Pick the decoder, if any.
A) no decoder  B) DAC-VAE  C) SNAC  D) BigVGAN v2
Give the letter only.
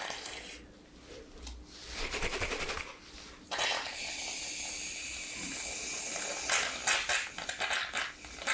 A